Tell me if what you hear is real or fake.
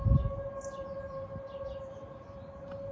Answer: real